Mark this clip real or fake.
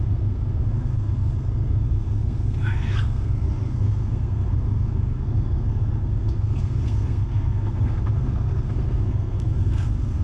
fake